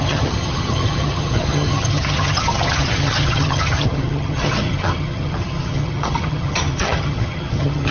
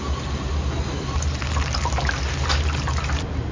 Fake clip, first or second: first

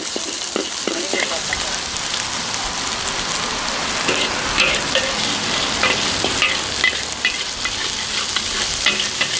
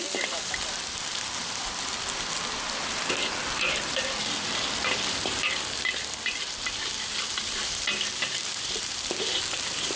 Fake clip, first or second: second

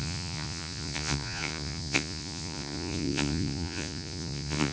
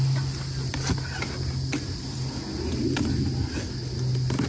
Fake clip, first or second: first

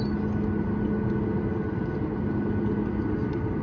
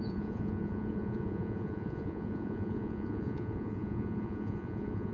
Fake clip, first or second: second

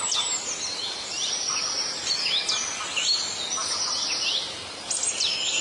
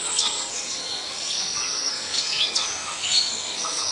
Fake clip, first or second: second